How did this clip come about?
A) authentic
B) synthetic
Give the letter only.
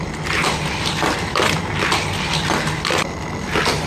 A